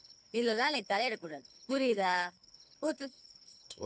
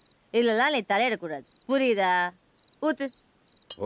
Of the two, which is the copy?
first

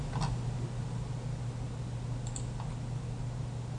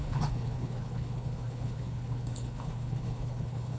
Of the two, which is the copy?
second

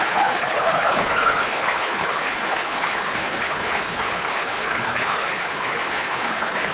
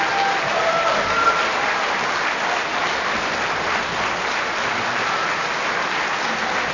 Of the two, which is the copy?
first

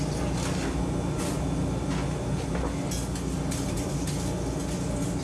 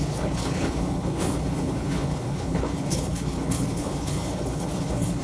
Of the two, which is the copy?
second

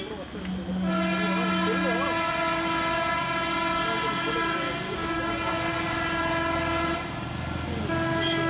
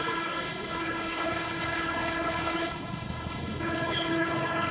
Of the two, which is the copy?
second